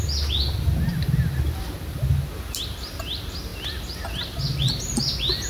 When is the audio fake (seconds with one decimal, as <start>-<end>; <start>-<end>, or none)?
none